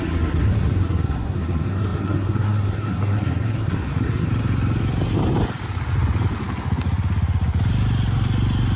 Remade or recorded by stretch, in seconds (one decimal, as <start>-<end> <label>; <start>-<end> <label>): 0.0-4.3 remade; 4.3-8.8 recorded